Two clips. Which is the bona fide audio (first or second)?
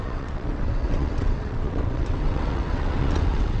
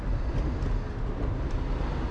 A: second